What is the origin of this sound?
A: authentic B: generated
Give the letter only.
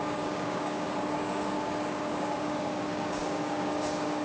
B